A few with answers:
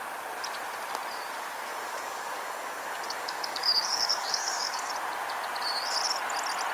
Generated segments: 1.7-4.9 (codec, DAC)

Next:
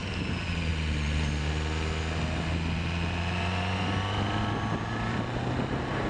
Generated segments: none

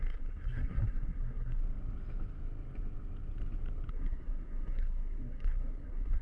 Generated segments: 0.0-1.6 (codec, SNAC); 3.9-6.2